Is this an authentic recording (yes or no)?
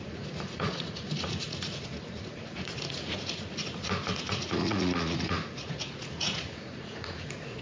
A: no